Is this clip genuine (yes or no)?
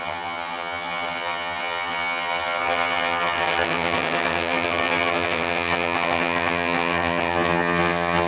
no